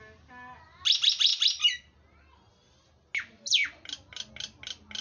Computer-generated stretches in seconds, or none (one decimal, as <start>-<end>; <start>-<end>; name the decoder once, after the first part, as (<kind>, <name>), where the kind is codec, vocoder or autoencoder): none